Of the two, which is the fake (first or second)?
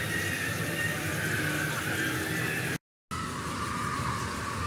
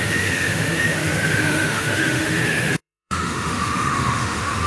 second